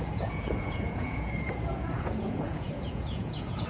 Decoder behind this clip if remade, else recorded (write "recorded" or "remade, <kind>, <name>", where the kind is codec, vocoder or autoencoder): remade, vocoder, Vocos